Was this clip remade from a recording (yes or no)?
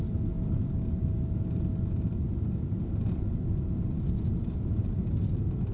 no